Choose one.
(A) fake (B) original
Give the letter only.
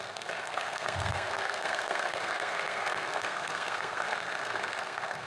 A